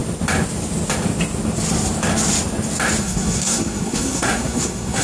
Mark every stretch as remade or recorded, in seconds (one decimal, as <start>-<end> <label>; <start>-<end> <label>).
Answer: 0.0-3.0 recorded; 3.0-5.0 remade